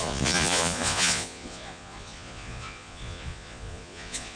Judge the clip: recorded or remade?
remade